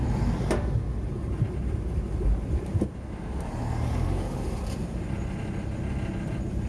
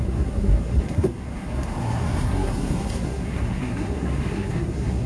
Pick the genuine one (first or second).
first